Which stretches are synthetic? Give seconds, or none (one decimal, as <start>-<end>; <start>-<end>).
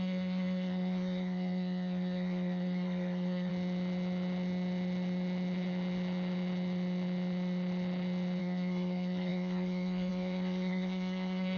0.0-3.5; 8.4-11.6